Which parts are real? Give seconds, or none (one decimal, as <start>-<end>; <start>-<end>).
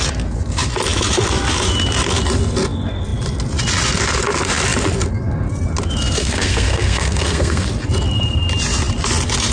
0.0-6.2; 7.7-9.5